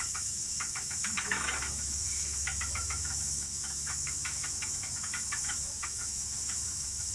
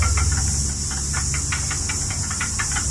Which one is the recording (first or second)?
second